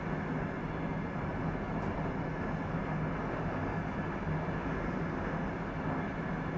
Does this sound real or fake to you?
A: real